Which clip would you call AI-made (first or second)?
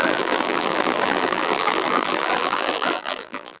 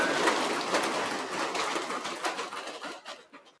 first